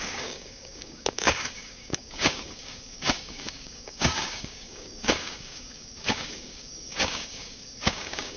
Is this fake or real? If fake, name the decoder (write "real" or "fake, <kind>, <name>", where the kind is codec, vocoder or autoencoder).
fake, codec, DAC